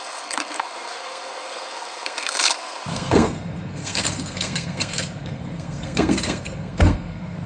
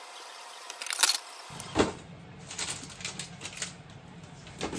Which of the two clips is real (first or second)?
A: second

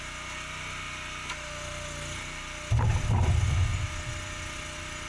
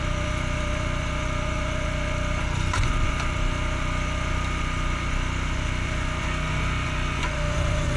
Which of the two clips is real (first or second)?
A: first